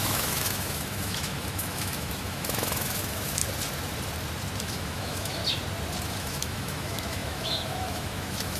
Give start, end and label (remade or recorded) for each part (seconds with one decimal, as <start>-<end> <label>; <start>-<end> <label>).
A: 0.0-3.4 remade; 3.4-4.6 recorded; 4.6-5.4 remade; 5.4-6.0 recorded; 6.0-8.6 remade